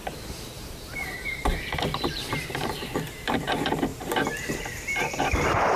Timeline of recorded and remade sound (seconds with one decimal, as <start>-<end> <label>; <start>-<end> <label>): 0.0-5.8 remade